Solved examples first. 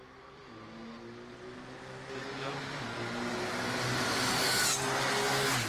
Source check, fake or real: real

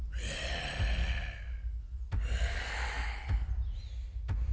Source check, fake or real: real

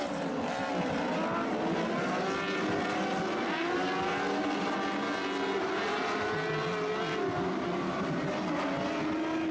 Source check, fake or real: real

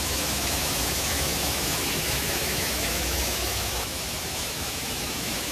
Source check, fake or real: fake